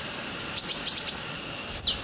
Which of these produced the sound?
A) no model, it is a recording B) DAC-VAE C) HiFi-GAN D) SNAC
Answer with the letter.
A